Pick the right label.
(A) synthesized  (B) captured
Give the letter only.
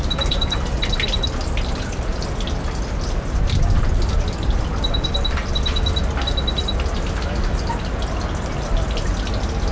B